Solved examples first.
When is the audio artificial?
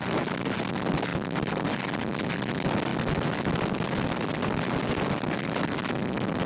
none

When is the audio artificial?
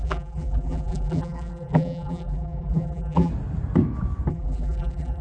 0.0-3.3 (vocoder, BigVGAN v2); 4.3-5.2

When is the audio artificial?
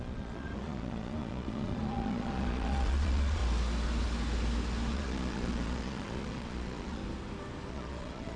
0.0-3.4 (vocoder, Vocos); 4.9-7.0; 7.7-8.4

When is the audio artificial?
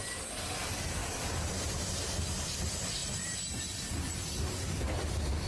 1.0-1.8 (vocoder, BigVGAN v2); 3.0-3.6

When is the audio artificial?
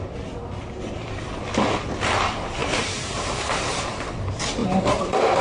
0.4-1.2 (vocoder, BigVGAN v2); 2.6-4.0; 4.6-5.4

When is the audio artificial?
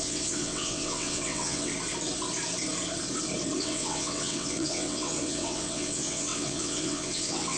0.0-1.7 (vocoder, WaveNeXt); 3.6-7.6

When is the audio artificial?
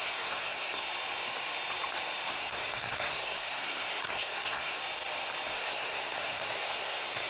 0.0-0.8 (codec, SNAC); 2.3-4.8; 5.5-7.3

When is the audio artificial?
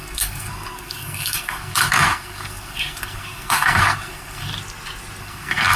0.0-4.5 (codec, SNAC); 5.2-5.8